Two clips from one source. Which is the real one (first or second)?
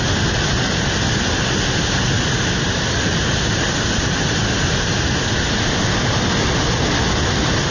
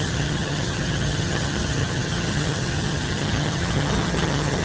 first